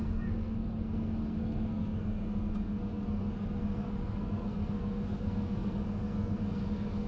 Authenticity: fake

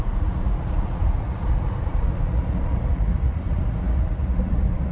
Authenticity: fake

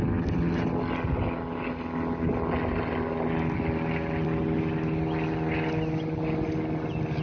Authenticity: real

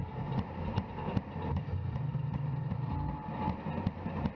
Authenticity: fake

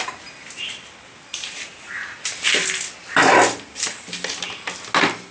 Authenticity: real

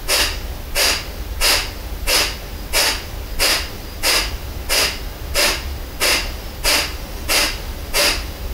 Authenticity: real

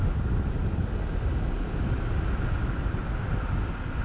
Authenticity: real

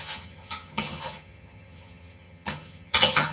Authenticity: fake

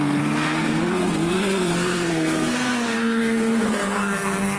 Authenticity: fake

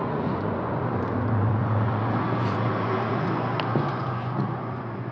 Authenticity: fake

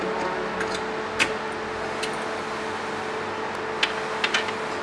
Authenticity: real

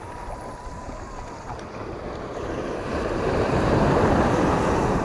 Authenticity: fake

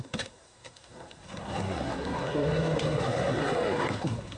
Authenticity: fake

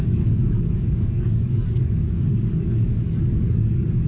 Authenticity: fake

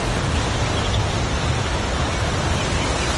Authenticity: real